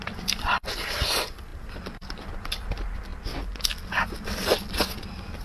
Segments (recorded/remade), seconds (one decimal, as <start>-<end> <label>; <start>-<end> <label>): 0.0-3.1 remade; 3.1-4.3 recorded; 4.3-5.4 remade